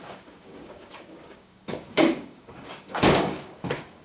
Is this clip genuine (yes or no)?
no